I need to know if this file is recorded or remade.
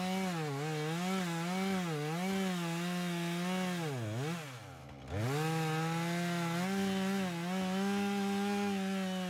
recorded